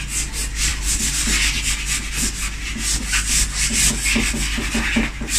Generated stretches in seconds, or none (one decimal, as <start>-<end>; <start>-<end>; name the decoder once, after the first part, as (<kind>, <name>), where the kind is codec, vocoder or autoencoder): none